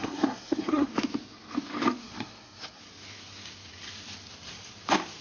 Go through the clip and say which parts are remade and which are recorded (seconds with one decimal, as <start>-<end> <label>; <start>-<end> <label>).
0.0-0.9 remade; 0.9-2.0 recorded; 2.0-2.8 remade; 2.8-5.2 recorded